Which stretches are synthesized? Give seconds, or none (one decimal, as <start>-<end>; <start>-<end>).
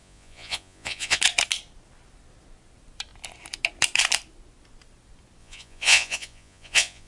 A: 0.0-1.2; 5.4-7.1